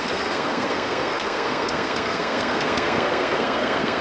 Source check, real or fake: fake